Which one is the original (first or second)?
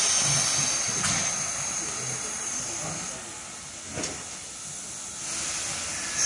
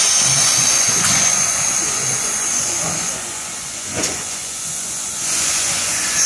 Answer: first